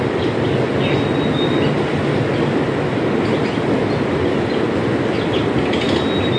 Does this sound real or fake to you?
real